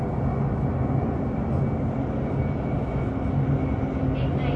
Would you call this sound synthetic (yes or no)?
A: no